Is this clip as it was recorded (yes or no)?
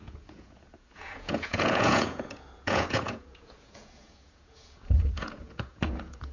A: no